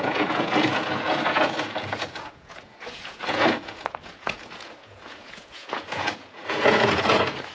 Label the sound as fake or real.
fake